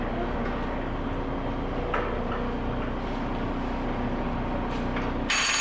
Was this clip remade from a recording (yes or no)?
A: no